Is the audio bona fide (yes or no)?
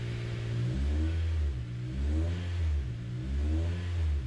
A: yes